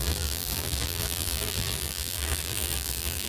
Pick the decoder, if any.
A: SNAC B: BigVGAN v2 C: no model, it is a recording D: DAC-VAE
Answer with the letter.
B